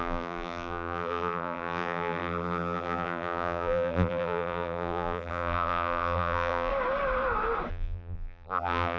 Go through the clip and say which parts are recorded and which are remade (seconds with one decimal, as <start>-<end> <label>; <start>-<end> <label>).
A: 0.0-6.7 remade; 6.7-7.7 recorded; 7.7-9.0 remade